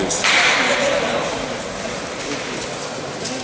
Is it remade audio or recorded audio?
recorded